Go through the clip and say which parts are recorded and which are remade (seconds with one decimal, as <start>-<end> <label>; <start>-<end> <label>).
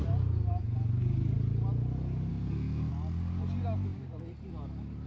0.0-2.3 recorded; 2.3-2.9 remade; 2.9-5.1 recorded